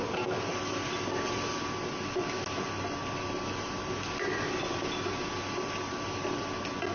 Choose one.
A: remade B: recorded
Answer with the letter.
B